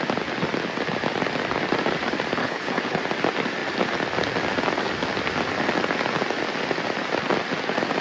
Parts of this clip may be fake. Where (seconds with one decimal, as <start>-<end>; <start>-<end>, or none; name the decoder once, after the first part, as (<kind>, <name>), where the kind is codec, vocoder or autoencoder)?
2.4-3.0 (codec, HILCodec)